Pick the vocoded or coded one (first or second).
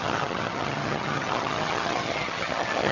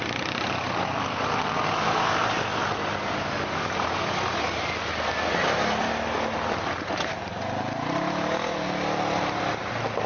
first